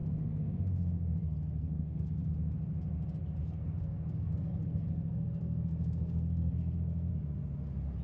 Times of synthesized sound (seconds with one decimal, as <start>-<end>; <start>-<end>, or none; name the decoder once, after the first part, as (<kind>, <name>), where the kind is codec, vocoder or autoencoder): 0.0-2.3 (codec, SNAC); 3.4-7.1